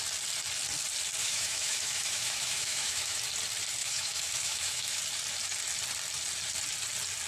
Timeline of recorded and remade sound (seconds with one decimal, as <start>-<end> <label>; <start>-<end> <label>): 0.0-1.2 recorded; 1.2-3.2 remade; 3.2-3.8 recorded; 3.8-5.0 remade; 5.0-7.3 recorded

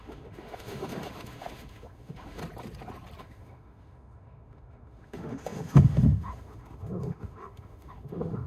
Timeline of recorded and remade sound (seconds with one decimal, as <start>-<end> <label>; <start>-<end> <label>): 0.0-2.4 remade; 2.4-3.2 recorded; 3.2-8.5 remade

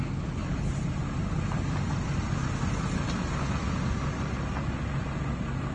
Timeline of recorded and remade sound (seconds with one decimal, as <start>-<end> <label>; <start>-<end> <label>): 0.0-5.7 recorded

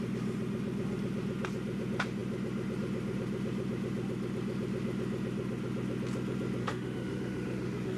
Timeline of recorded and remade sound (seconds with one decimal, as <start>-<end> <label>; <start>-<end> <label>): 0.0-6.6 recorded; 6.6-8.0 remade

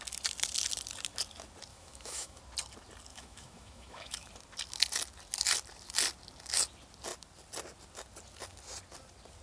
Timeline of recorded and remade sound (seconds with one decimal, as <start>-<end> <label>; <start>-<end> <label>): 0.0-1.7 recorded; 1.7-2.4 remade; 2.4-3.1 recorded; 3.1-4.3 remade; 4.3-9.4 recorded